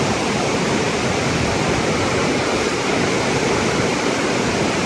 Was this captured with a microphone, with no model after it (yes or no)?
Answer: yes